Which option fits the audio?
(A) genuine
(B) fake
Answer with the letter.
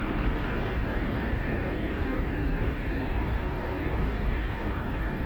B